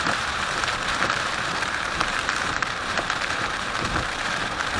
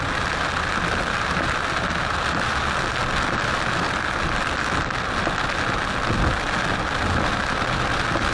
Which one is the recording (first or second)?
second